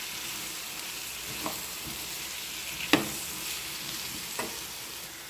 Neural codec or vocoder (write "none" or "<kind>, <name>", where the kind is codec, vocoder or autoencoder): none